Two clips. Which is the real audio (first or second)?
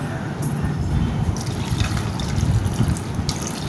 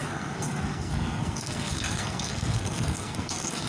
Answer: first